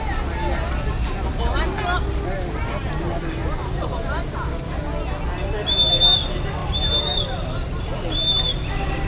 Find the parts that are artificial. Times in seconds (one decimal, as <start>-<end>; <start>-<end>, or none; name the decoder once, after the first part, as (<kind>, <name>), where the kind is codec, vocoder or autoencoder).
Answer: none